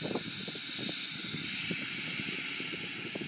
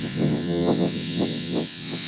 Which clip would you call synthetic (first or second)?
second